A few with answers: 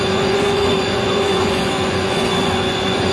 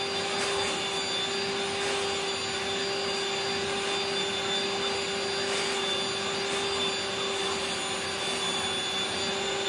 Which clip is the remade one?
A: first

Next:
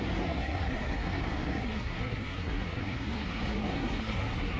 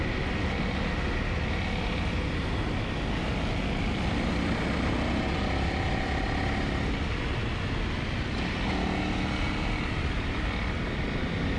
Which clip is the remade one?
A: first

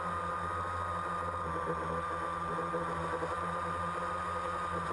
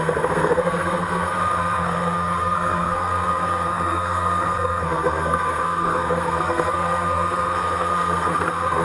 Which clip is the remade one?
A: second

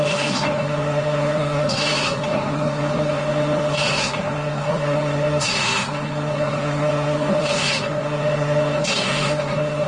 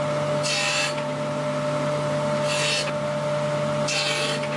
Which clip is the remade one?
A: first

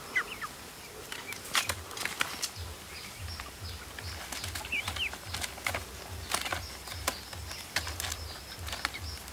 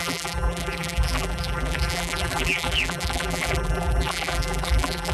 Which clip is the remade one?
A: second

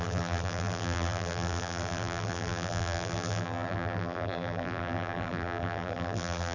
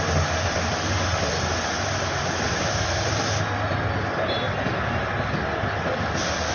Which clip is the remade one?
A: first